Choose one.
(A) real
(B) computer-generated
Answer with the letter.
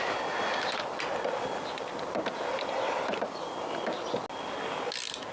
A